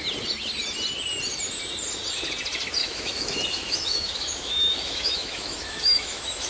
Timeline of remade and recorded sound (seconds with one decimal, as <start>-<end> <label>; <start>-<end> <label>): 0.0-2.8 recorded; 2.8-6.5 remade